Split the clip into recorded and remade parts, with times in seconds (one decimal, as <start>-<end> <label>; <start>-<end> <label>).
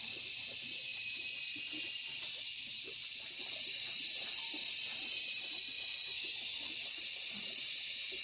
0.0-5.5 remade; 5.5-6.8 recorded; 6.8-8.2 remade